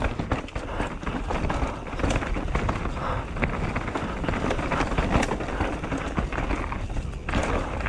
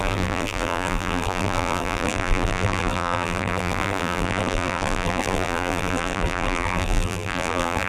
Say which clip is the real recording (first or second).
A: first